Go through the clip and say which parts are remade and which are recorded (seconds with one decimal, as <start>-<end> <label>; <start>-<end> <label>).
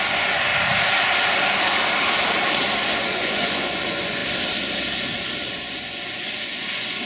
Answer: 0.0-0.5 remade; 0.5-3.0 recorded; 3.0-4.2 remade; 4.2-5.5 recorded; 5.5-7.1 remade